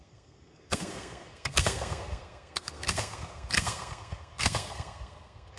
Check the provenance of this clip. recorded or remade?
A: remade